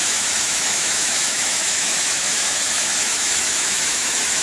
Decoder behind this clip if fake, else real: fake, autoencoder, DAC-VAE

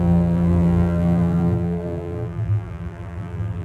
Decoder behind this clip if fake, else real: fake, vocoder, BigVGAN v2